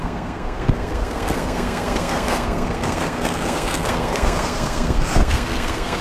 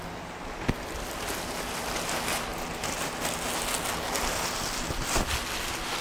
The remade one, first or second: first